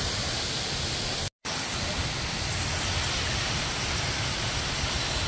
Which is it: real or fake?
real